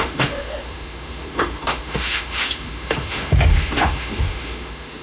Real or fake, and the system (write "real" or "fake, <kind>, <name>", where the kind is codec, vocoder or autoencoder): fake, autoencoder, DAC-VAE